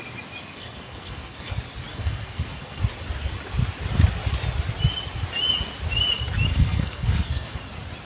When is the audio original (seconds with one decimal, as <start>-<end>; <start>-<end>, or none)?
0.0-0.4; 1.5-1.9; 2.8-6.5; 7.6-8.1